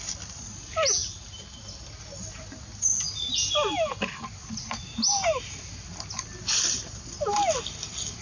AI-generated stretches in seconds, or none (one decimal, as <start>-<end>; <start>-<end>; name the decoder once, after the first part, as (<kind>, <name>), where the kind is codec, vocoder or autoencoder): 1.0-1.6 (vocoder, BigVGAN v2)